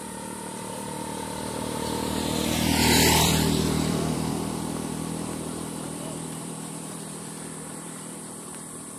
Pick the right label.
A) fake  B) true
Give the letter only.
A